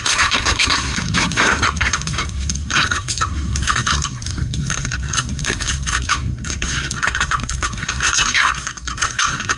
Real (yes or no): no